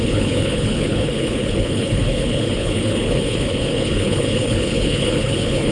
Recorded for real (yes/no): no